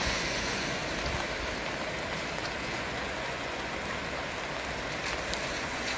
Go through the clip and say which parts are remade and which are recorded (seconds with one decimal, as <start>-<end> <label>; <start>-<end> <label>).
0.0-0.8 remade; 0.8-2.6 recorded; 2.6-3.8 remade; 3.8-5.4 recorded; 5.4-6.0 remade